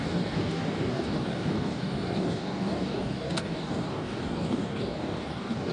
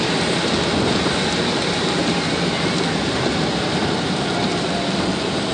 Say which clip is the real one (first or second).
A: second